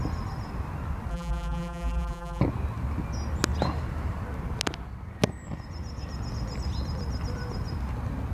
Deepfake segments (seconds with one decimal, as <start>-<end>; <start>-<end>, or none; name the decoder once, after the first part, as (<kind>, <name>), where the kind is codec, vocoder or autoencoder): 1.1-2.4 (vocoder, BigVGAN v2)